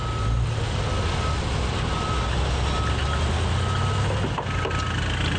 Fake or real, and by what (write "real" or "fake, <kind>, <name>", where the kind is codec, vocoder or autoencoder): real